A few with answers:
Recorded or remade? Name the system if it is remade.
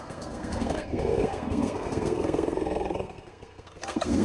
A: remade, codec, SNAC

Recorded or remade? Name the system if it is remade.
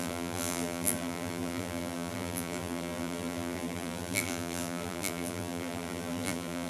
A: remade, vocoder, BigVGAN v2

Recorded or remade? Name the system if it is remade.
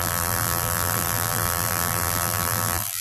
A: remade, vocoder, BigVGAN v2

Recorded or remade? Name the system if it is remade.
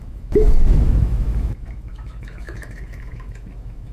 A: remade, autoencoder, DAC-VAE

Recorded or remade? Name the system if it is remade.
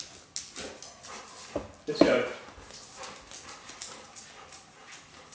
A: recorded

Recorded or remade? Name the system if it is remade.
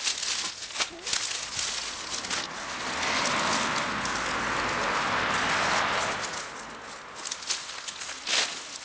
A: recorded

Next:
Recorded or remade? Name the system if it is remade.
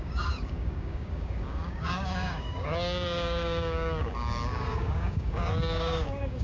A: remade, codec, DAC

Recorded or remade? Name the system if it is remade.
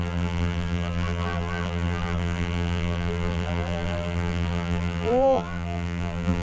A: remade, vocoder, BigVGAN v2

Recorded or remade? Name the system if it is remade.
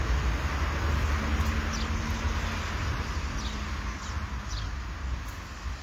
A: recorded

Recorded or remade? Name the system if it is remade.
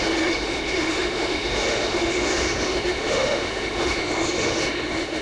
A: remade, autoencoder, DAC-VAE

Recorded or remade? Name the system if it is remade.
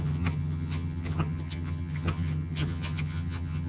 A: remade, vocoder, HiFi-GAN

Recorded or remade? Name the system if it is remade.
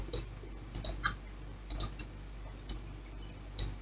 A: recorded